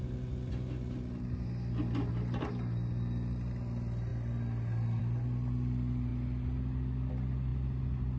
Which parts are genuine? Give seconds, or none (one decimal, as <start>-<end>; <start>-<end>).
0.0-8.2